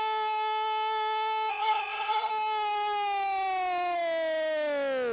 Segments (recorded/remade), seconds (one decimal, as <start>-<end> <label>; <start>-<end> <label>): 0.0-1.5 recorded; 1.5-2.3 remade; 2.3-5.1 recorded